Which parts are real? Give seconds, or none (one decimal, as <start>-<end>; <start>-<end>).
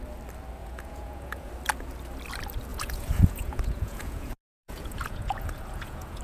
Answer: 0.0-0.6; 1.5-2.7